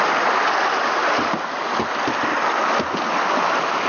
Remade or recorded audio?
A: recorded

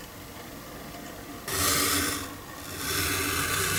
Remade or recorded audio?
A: recorded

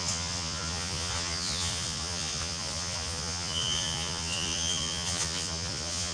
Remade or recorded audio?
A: remade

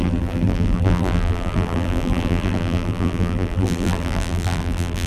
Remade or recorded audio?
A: remade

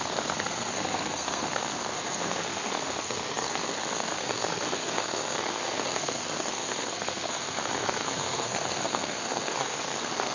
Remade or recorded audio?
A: remade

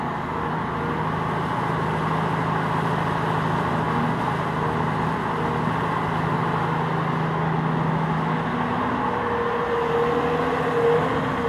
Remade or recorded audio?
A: recorded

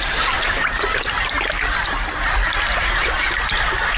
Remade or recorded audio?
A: recorded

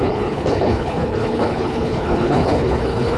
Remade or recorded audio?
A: remade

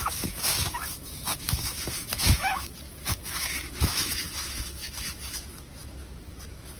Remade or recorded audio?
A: remade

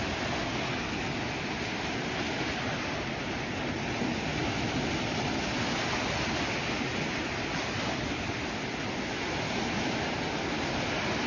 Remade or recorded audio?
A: recorded